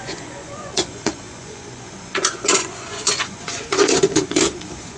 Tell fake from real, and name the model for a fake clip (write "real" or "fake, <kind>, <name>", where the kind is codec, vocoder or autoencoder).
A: fake, vocoder, Vocos